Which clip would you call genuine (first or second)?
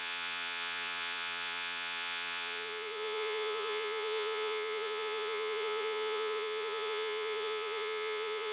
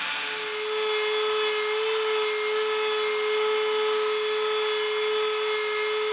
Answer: second